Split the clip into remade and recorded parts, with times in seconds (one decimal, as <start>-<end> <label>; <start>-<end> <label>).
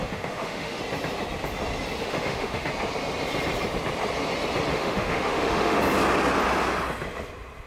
0.0-0.8 remade; 0.8-2.0 recorded; 2.0-2.7 remade; 2.7-4.7 recorded; 4.7-5.8 remade; 5.8-7.7 recorded